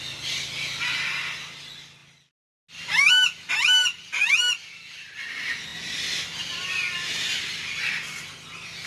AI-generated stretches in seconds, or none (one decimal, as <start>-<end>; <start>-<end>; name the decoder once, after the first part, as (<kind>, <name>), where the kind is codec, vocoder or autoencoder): none